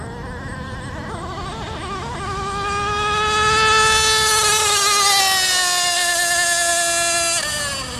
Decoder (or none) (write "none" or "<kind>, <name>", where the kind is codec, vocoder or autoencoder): none